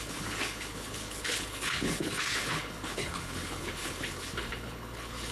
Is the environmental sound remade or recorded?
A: remade